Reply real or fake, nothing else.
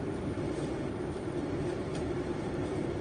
fake